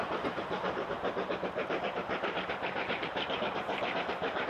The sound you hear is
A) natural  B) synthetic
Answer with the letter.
B